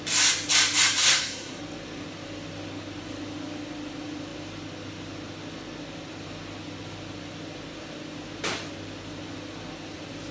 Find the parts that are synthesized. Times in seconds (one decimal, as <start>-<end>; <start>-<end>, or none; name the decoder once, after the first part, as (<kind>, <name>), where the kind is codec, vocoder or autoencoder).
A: 1.0-1.6 (codec, SNAC)